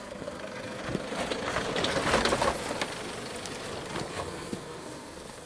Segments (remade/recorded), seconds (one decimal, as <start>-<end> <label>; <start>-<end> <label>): 0.0-0.8 remade; 0.8-4.1 recorded; 4.1-5.5 remade